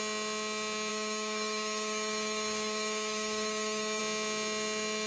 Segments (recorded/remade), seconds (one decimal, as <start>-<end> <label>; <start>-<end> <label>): 0.0-0.9 recorded; 0.9-4.0 remade; 4.0-5.1 recorded